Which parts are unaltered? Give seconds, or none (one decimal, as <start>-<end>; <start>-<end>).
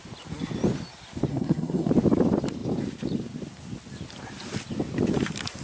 0.0-1.3; 1.9-5.6